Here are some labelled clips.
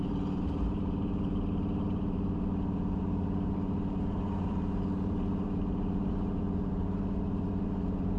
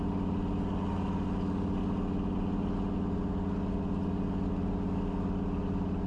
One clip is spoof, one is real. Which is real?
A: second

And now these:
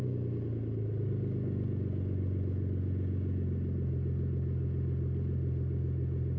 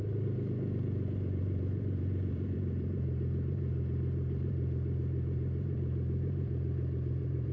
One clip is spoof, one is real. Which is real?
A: first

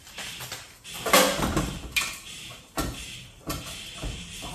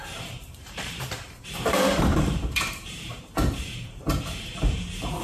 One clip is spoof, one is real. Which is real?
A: first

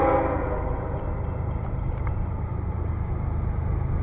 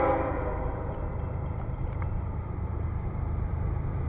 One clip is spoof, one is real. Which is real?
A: first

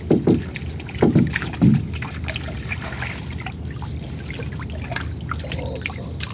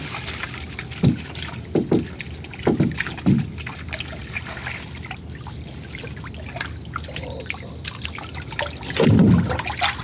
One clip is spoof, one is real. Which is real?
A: second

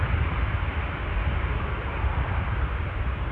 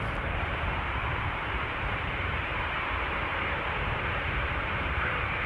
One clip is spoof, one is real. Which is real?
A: first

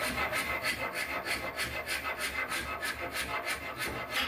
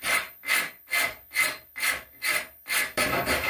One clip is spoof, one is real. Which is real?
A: first